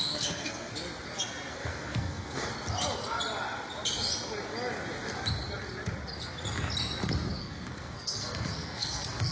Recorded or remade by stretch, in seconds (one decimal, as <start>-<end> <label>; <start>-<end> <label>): 0.0-0.7 remade; 0.7-1.5 recorded; 1.5-2.5 remade; 2.5-7.4 recorded; 7.4-9.3 remade